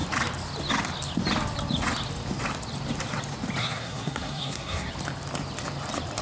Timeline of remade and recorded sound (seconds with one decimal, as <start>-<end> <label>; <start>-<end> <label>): 0.0-3.6 recorded; 3.6-4.9 remade; 4.9-6.2 recorded